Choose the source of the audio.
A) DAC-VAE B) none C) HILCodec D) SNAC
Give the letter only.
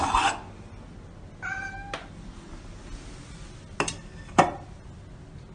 B